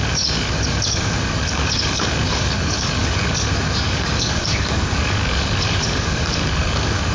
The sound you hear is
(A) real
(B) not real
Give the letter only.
B